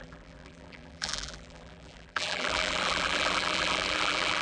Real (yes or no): no